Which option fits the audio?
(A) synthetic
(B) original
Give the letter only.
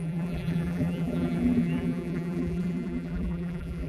A